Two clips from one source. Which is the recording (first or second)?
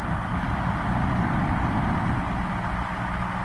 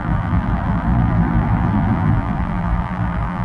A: first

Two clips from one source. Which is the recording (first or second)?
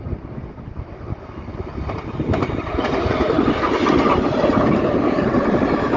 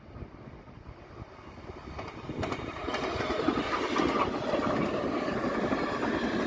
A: second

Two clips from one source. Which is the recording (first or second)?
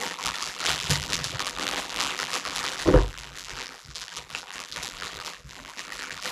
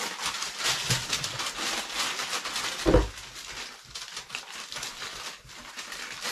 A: second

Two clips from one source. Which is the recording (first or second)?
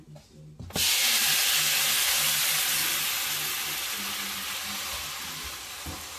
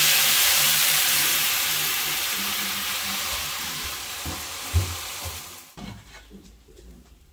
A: first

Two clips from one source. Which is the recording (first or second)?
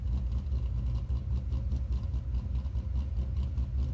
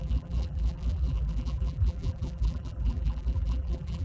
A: first